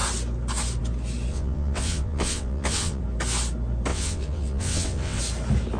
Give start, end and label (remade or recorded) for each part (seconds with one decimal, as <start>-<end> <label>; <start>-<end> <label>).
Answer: 0.0-1.3 recorded; 1.3-3.0 remade; 3.0-3.9 recorded; 3.9-5.2 remade; 5.2-5.8 recorded